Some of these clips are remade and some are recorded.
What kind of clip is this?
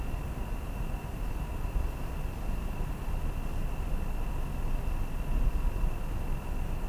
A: recorded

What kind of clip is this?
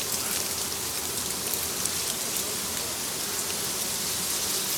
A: recorded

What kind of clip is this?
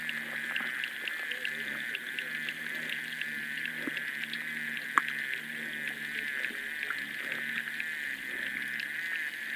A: recorded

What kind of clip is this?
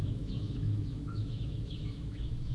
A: remade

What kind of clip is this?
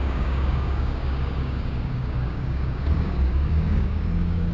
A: remade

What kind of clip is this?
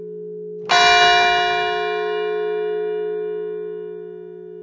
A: recorded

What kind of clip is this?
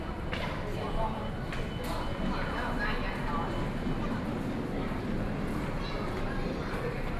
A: recorded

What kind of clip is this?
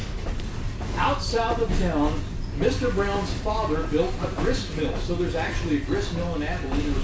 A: recorded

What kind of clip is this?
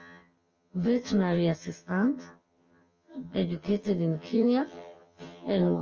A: remade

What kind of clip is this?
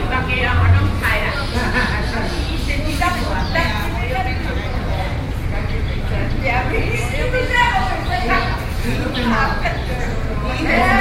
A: recorded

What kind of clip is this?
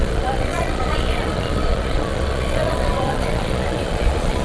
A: remade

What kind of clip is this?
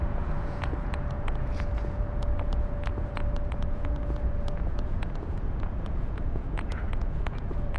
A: remade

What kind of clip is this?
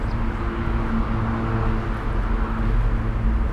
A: recorded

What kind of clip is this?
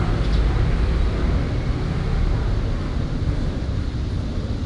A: recorded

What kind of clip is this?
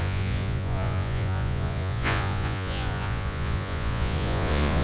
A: remade